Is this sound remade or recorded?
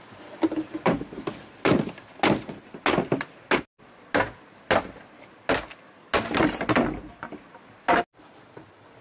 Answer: recorded